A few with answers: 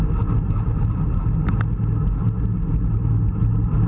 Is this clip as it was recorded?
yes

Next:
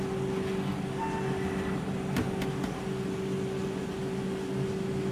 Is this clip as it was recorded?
yes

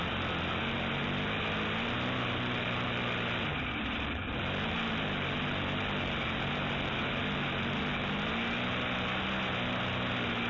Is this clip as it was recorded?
yes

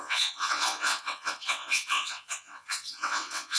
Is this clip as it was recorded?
no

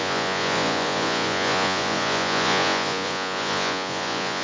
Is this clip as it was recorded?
no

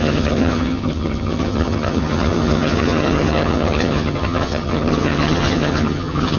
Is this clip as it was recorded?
no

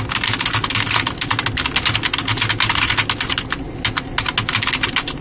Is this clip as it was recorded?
yes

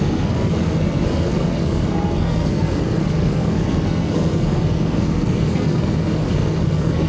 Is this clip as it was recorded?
no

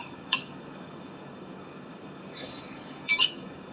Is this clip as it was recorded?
no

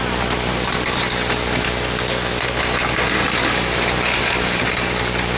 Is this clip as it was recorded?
yes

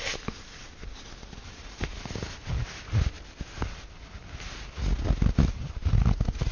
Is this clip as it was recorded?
yes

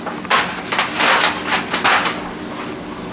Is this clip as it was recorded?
yes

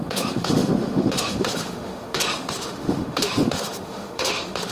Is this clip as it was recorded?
no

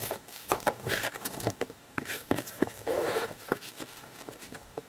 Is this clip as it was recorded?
no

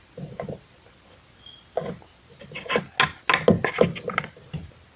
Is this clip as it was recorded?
yes